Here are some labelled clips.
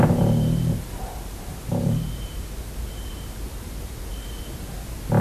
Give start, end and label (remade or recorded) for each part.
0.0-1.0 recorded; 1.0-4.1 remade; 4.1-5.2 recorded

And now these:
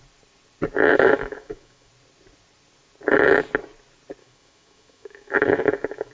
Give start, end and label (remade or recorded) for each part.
0.0-0.9 recorded; 0.9-1.9 remade; 1.9-4.2 recorded; 4.2-6.1 remade

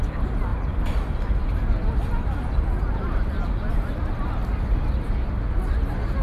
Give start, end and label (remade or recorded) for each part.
0.0-6.2 recorded

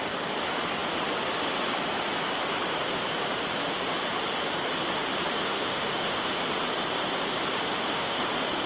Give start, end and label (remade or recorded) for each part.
0.0-5.5 recorded; 5.5-6.5 remade; 6.5-7.7 recorded; 7.7-8.2 remade; 8.2-8.7 recorded

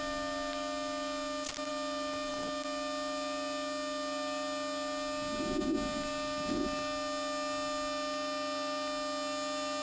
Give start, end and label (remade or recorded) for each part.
0.0-9.8 recorded

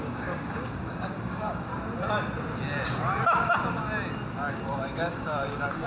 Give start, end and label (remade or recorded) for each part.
0.0-1.7 remade; 1.7-4.5 recorded; 4.5-5.9 remade